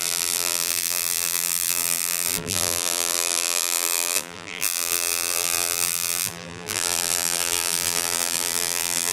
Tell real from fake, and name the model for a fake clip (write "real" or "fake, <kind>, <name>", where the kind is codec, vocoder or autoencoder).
fake, vocoder, BigVGAN v2